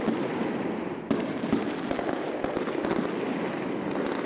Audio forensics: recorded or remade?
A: recorded